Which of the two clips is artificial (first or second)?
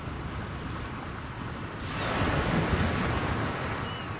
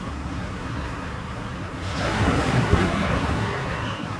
second